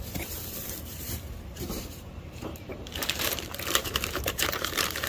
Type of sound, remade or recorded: remade